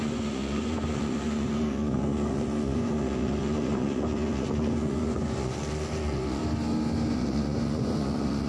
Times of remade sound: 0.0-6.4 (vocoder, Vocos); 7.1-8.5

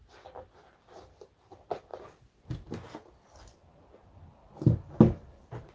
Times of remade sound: none

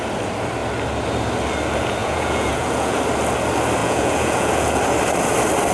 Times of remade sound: 2.0-3.0 (vocoder, Vocos); 3.8-4.8

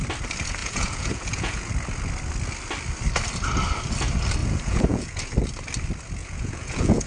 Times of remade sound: 0.6-1.7 (vocoder, Vocos); 4.4-5.2; 6.2-7.1